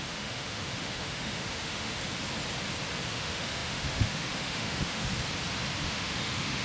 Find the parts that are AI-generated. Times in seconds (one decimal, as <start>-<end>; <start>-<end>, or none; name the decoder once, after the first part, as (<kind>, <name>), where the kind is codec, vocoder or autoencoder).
0.0-2.0 (autoencoder, DAC-VAE); 3.1-5.1; 5.8-6.6